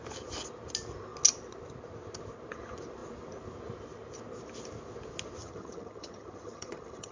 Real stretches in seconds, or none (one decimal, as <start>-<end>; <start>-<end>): 0.0-5.4